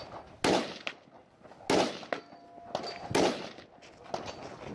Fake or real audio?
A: real